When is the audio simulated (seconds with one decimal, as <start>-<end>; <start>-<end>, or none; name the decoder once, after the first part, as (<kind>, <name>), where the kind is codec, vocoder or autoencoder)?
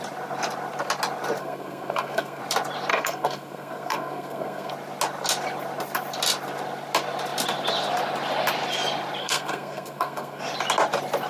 1.4-2.4 (codec, SNAC); 2.9-4.7; 9.2-10.4